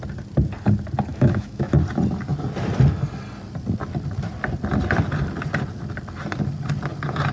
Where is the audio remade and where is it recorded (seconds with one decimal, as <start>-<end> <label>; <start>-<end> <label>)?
0.0-1.1 recorded; 1.1-1.7 remade; 1.7-7.3 recorded